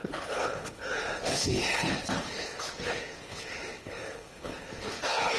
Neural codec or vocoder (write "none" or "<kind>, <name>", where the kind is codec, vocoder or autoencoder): codec, HILCodec